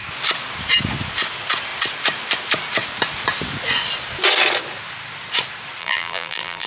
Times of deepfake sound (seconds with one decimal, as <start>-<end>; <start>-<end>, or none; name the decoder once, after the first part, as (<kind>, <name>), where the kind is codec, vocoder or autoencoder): 5.8-6.7 (vocoder, BigVGAN v2)